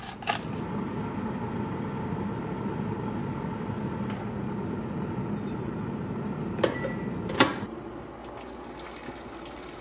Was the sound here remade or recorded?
recorded